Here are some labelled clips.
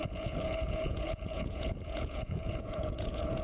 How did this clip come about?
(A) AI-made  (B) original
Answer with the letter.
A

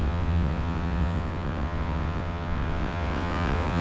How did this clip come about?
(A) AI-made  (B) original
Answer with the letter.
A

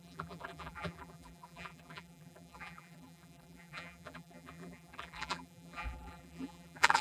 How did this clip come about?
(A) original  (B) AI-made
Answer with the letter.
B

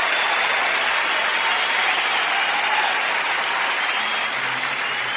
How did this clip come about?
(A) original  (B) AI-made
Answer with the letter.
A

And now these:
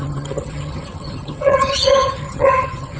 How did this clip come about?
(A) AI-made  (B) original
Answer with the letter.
A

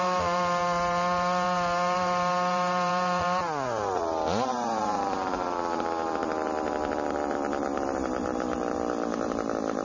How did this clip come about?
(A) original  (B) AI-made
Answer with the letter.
B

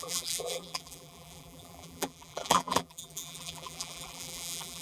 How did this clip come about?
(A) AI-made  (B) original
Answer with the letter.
A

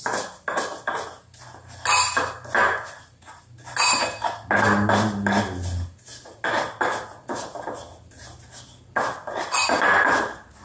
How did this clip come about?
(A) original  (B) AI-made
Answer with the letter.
A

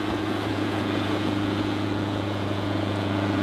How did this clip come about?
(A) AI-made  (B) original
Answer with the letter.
A